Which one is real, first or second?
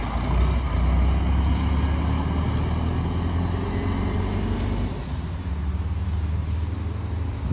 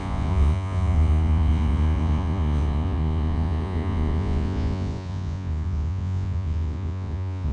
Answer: first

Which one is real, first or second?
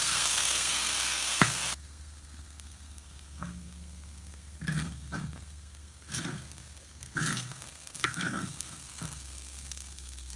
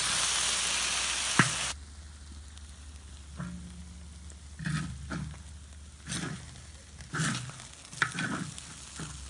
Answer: second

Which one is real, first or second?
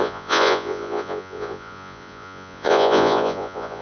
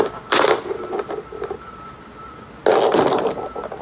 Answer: second